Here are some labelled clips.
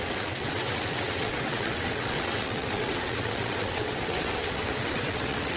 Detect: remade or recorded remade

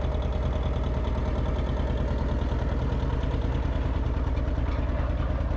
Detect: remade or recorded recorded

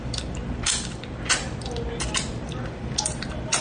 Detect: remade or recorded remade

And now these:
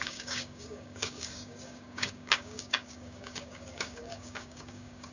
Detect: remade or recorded remade